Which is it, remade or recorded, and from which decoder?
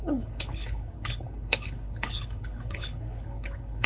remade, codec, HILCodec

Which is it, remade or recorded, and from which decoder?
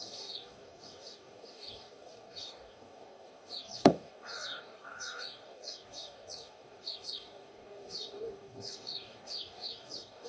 remade, codec, DAC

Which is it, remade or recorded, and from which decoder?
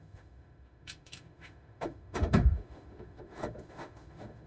remade, autoencoder, DAC-VAE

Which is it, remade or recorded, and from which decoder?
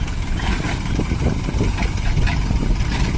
remade, vocoder, BigVGAN v2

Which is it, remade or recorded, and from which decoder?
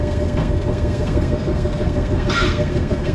remade, codec, SNAC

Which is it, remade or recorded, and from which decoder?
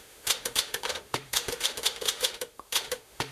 remade, autoencoder, DAC-VAE